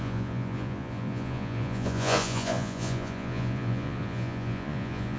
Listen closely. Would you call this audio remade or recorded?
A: remade